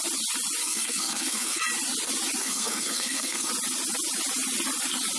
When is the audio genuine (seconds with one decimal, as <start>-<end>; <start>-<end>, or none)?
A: 0.0-0.6; 1.6-2.4; 3.5-5.2